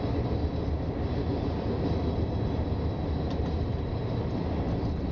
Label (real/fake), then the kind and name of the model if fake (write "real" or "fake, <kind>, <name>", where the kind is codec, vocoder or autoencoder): real